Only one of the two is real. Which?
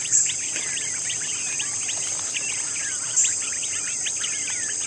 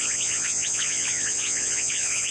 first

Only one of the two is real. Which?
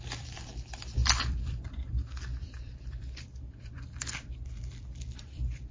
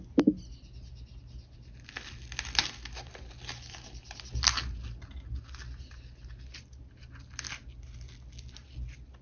second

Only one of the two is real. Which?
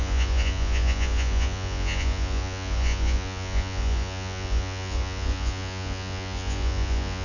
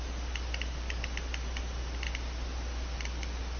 second